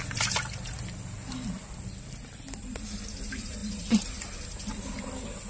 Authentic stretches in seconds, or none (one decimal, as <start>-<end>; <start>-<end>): 0.0-5.5